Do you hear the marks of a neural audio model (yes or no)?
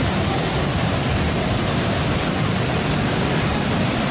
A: no